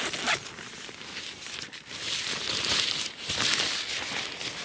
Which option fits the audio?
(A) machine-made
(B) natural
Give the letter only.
B